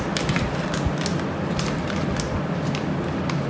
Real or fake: real